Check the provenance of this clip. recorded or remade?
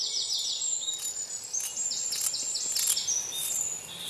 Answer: recorded